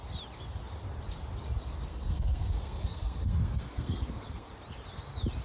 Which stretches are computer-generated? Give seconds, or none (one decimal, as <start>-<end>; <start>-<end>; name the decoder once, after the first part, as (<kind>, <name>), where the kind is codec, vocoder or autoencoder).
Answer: 1.9-4.5 (codec, SNAC)